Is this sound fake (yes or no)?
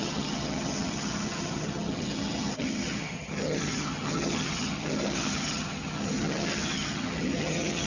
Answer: yes